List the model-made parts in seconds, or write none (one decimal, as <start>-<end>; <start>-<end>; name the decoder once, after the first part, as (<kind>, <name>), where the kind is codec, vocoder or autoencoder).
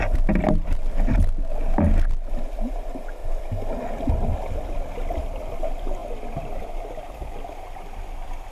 0.0-0.9 (vocoder, BigVGAN v2); 3.2-4.1